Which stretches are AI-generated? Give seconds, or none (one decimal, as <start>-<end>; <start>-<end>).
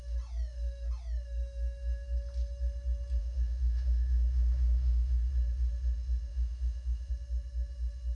3.2-5.3; 6.3-7.1